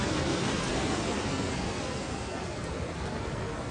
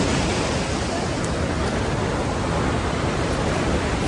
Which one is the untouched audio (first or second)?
second